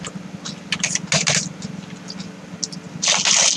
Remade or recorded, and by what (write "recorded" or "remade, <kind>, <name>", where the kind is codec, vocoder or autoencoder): recorded